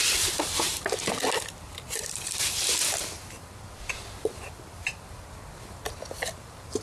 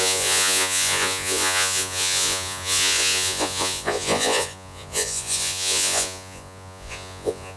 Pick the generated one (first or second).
second